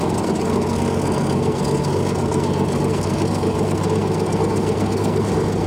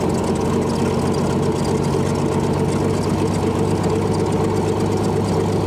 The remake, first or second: first